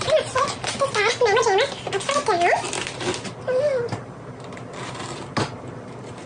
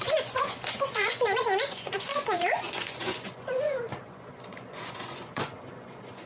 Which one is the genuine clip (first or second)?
first